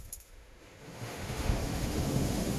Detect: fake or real fake